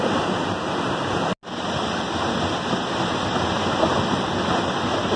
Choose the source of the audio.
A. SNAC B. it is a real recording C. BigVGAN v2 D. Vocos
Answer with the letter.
B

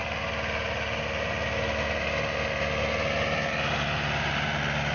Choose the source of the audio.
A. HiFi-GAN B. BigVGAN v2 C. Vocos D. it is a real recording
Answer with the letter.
D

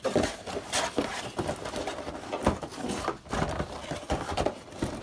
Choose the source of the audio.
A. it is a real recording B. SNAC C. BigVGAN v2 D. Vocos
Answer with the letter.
A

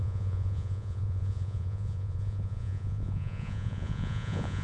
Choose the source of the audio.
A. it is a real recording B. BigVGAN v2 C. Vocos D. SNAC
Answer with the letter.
C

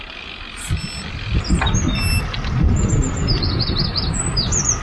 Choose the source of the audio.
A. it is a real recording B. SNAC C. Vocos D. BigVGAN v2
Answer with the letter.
A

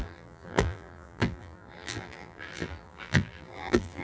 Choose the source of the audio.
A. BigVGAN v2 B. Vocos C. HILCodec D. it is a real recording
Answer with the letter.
A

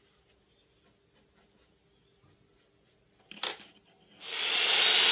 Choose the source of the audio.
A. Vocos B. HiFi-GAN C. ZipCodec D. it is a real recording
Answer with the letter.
D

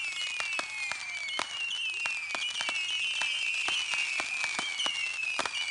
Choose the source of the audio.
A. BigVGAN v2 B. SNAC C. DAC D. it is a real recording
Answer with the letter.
D